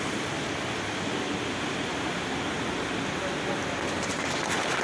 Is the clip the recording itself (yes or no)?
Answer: yes